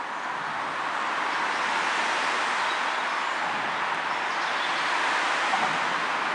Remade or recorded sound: recorded